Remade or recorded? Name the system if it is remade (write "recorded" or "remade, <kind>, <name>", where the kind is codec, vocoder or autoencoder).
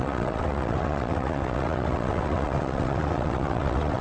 remade, vocoder, WaveNeXt